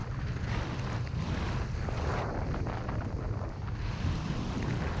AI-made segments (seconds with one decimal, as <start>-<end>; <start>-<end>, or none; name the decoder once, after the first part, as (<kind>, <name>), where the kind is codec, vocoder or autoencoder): none